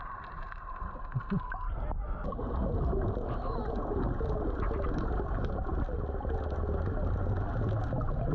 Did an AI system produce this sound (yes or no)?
no